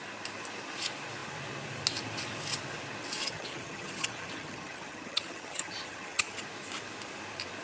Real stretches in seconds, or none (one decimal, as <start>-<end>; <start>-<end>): 0.0-3.2; 6.4-7.6